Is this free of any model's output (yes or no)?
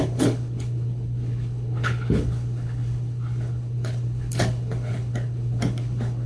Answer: no